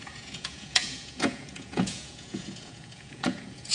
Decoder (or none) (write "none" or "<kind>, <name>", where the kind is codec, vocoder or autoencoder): vocoder, Vocos